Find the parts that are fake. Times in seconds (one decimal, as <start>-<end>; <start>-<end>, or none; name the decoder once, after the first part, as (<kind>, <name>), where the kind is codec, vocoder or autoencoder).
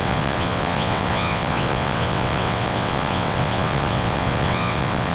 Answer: 0.0-5.1 (vocoder, WaveNeXt)